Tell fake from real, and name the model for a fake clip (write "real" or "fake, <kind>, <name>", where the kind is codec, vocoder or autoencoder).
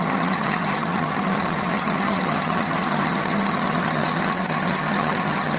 fake, vocoder, HiFi-GAN